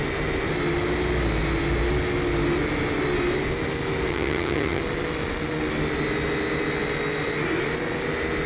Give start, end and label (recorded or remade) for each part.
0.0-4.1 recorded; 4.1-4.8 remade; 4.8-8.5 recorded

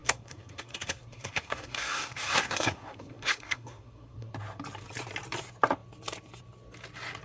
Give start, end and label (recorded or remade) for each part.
0.0-4.3 remade; 4.3-7.2 recorded

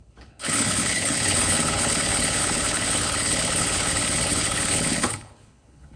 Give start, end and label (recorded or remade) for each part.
0.0-6.0 remade

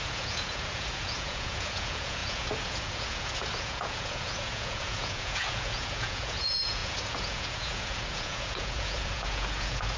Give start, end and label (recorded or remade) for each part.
0.0-10.0 remade